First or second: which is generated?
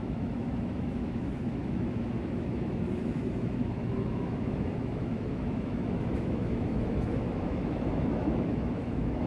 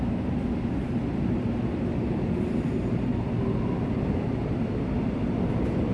first